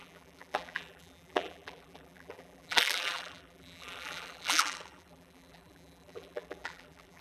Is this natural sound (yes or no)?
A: no